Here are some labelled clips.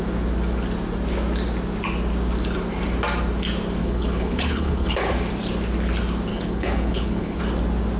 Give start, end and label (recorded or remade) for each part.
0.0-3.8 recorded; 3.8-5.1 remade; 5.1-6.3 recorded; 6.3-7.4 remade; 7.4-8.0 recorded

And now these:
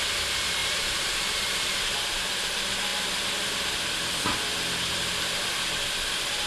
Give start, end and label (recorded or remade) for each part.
0.0-0.6 recorded; 0.6-1.8 remade; 1.8-6.5 recorded

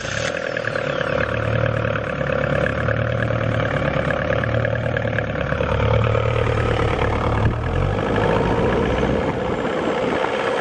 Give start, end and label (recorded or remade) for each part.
0.0-2.7 recorded; 2.7-7.4 remade; 7.4-10.6 recorded

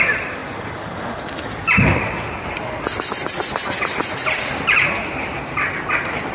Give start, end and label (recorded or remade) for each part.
0.0-6.3 recorded

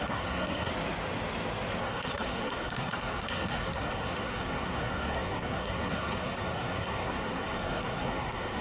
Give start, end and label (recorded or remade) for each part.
0.0-0.7 remade; 0.7-1.8 recorded; 1.8-8.6 remade

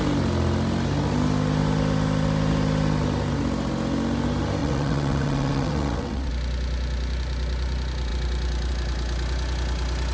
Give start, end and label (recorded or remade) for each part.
0.0-4.6 recorded; 4.6-6.3 remade; 6.3-10.1 recorded

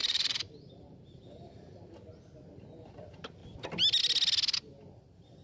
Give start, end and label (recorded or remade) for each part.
0.0-1.2 remade; 1.2-5.4 recorded